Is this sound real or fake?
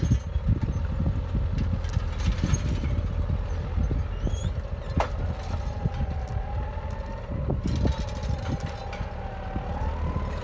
real